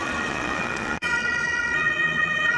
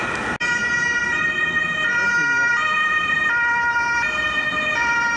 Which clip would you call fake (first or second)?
first